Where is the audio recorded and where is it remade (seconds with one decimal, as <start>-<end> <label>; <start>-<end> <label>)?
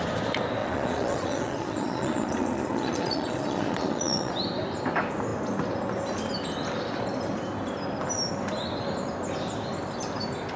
0.0-0.6 recorded; 0.6-4.3 remade; 4.3-10.6 recorded